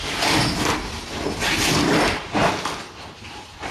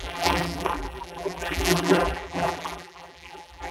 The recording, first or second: first